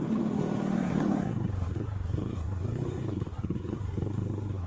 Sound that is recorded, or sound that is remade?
remade